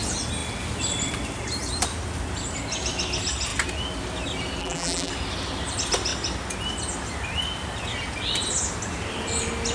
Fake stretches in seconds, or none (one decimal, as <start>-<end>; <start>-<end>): 4.6-5.1